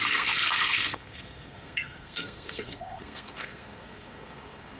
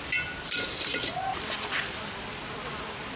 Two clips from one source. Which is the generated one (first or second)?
first